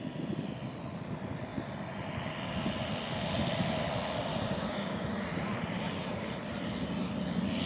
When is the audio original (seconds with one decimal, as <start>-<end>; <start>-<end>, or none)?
0.0-4.3; 5.1-7.7